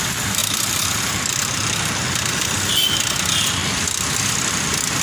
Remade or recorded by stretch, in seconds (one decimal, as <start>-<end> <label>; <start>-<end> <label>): 0.0-3.6 remade; 3.6-5.0 recorded